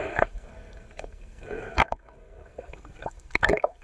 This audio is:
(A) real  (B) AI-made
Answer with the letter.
B